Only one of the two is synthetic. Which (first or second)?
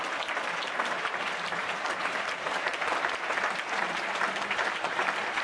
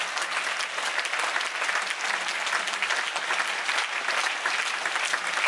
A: first